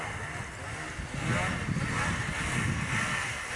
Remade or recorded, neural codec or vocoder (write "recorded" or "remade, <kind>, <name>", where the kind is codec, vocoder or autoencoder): recorded